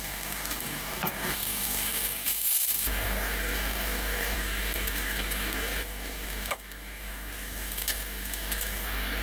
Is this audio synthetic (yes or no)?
yes